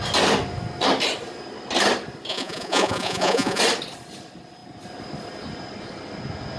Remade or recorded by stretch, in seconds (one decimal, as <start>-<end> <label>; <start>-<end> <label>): 0.0-2.3 recorded; 2.3-3.6 remade; 3.6-6.6 recorded